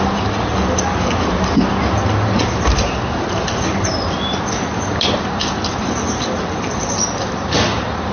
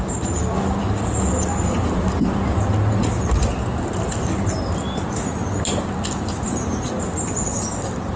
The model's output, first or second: first